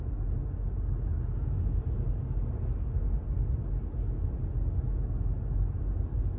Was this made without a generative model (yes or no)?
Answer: yes